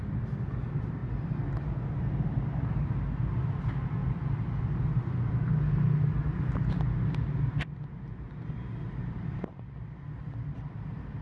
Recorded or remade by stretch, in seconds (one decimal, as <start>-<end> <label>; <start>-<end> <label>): 0.0-11.2 recorded